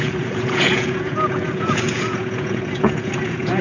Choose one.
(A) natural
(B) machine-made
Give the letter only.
B